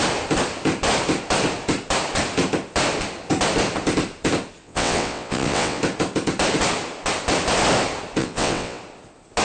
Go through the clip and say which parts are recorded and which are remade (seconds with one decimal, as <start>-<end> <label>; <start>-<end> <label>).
0.0-4.6 recorded; 4.6-5.8 remade; 5.8-8.2 recorded; 8.2-8.8 remade; 8.8-9.4 recorded